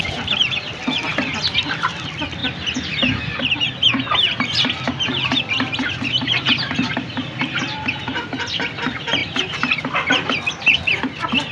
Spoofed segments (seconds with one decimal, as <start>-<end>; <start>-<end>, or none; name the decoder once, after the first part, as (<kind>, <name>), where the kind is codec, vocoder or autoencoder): 0.0-2.4 (vocoder, BigVGAN v2); 5.4-11.5